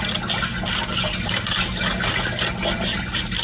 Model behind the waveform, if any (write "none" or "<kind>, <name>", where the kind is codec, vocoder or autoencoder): none